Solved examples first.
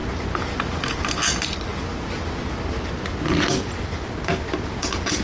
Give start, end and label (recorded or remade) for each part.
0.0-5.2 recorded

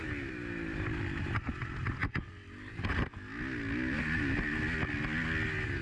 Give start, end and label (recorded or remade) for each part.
0.0-5.8 recorded

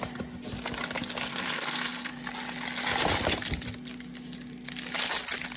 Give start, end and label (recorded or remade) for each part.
0.0-1.3 recorded; 1.3-2.1 remade; 2.1-5.6 recorded